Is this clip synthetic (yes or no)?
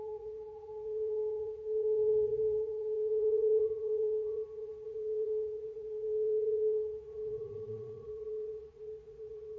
yes